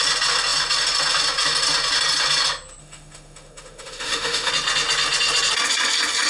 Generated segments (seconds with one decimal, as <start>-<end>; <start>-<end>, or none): 2.8-4.5